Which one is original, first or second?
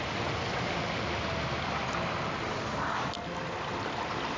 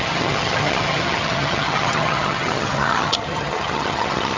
first